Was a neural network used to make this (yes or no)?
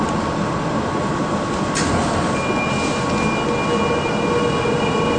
no